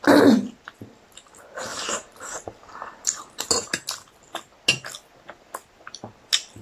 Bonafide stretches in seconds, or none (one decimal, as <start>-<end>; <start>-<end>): 0.0-1.7; 3.5-6.6